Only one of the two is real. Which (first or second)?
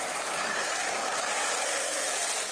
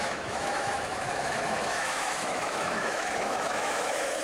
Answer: first